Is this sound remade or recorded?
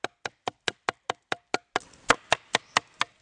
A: recorded